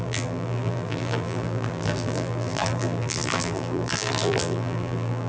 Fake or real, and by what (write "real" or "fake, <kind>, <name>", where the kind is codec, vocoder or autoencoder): fake, vocoder, BigVGAN v2